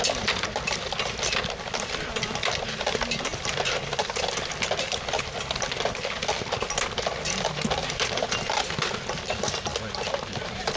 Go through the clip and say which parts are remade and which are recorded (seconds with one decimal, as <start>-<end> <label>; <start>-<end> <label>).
0.0-10.8 recorded